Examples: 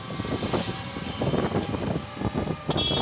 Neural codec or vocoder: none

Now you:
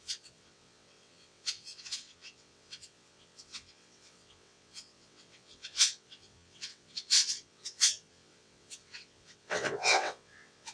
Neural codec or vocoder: vocoder, WaveNeXt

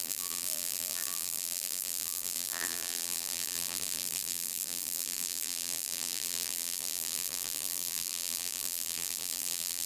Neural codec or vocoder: vocoder, BigVGAN v2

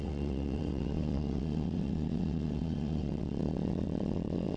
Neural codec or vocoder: vocoder, WaveNeXt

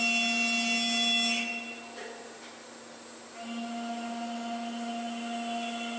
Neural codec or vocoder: none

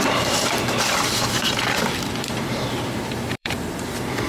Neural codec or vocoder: vocoder, BigVGAN v2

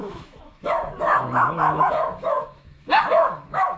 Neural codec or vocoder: autoencoder, DAC-VAE